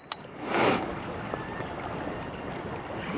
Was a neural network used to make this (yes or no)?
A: no